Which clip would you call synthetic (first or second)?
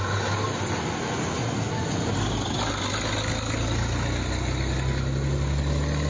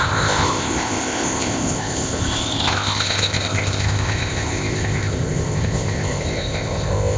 second